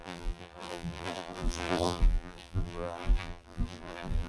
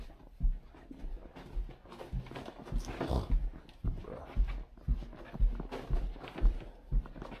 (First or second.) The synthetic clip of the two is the first